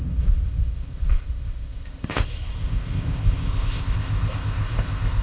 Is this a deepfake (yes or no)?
yes